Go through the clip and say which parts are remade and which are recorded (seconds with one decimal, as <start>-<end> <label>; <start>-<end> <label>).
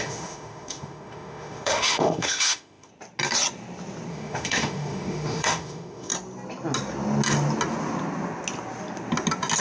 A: 0.0-2.9 remade; 2.9-4.1 recorded; 4.1-6.1 remade; 6.1-9.6 recorded